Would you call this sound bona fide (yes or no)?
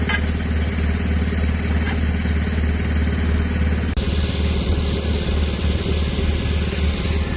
yes